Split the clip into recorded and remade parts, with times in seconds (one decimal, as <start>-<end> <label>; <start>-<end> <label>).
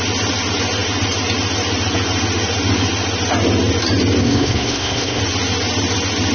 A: 0.0-4.2 recorded; 4.2-5.2 remade; 5.2-6.3 recorded